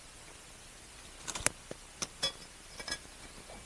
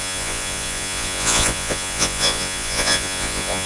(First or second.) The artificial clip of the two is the second